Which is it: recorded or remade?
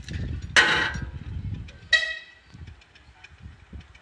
recorded